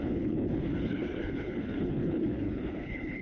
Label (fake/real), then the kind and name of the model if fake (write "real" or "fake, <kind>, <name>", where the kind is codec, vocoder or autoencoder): fake, codec, HILCodec